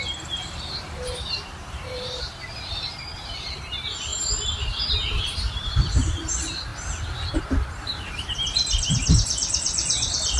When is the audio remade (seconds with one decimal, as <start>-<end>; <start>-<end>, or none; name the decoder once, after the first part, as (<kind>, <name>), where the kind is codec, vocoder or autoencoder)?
0.0-4.1 (vocoder, BigVGAN v2); 4.6-6.7; 7.4-10.4